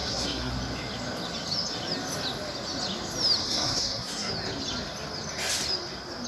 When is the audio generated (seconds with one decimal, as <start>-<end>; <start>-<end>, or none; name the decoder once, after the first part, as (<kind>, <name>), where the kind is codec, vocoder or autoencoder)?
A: 0.0-0.5 (codec, SNAC); 3.4-4.3